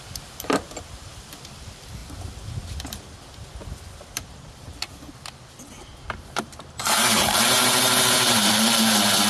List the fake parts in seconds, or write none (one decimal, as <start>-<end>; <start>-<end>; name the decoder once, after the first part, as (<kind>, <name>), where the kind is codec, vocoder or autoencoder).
5.9-8.5 (vocoder, BigVGAN v2)